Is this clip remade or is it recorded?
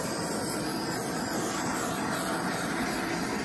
recorded